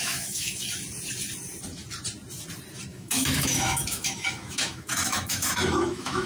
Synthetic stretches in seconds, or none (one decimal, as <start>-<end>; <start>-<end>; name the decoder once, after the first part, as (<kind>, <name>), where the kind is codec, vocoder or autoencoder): 0.0-0.6 (autoencoder, DAC-VAE); 2.9-6.3